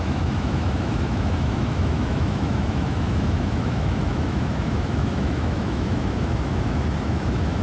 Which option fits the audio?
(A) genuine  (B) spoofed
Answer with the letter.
B